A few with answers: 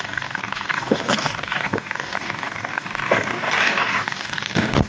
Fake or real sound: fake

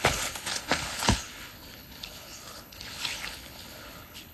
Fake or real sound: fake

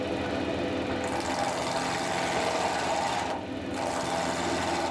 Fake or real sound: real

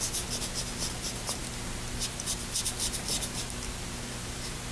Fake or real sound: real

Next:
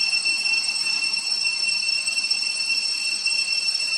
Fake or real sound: fake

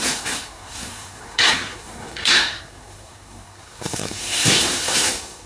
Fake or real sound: fake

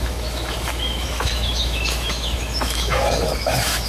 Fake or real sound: fake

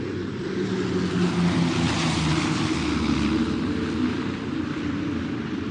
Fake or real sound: real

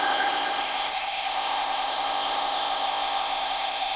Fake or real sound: fake